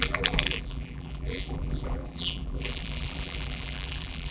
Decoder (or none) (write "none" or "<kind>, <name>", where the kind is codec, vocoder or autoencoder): vocoder, BigVGAN v2